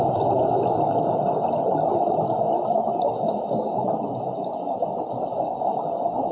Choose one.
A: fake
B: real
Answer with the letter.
B